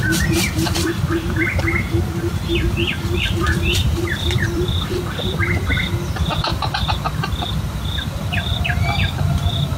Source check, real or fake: fake